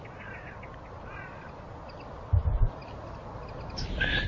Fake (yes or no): no